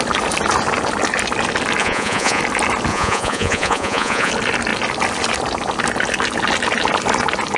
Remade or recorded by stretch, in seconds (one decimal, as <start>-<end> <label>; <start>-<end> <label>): 0.0-1.8 recorded; 1.8-2.4 remade; 2.4-2.9 recorded; 2.9-4.3 remade; 4.3-7.6 recorded